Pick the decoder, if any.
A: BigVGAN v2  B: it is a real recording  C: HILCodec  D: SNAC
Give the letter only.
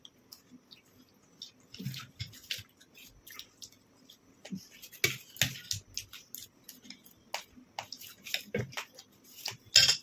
B